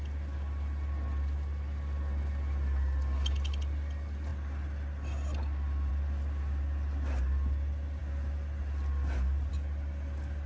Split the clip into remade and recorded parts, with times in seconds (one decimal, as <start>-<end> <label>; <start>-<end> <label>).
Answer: 0.0-10.5 recorded